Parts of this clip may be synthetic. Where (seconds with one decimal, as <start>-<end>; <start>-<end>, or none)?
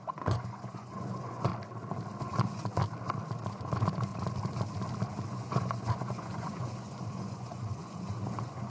0.0-1.5; 2.2-2.8; 3.5-4.1; 5.3-8.7